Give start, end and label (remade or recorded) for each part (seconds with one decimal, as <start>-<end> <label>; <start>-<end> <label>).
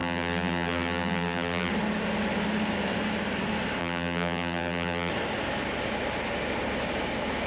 0.0-1.7 remade; 1.7-3.8 recorded; 3.8-5.1 remade; 5.1-7.5 recorded